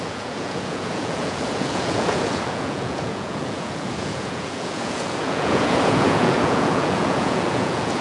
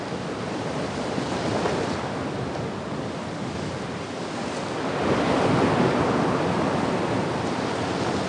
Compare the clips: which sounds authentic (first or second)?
second